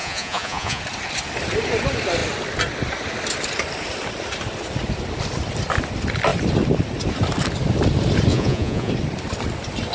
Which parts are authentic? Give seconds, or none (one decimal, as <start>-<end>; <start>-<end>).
0.8-8.3; 8.9-9.9